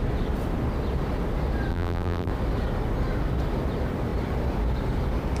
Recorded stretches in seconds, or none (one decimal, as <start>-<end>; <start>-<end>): 0.0-1.7; 2.3-5.4